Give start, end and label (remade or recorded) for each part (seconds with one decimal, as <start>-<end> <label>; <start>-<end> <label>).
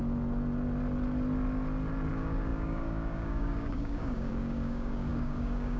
0.0-2.1 recorded; 2.1-5.8 remade